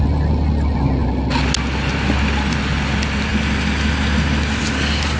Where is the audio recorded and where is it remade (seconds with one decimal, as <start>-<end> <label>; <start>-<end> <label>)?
0.0-5.2 recorded